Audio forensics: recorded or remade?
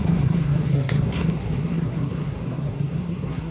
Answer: remade